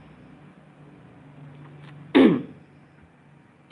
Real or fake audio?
real